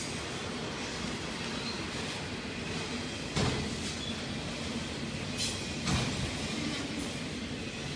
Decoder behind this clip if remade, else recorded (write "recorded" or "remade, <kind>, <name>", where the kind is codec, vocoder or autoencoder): recorded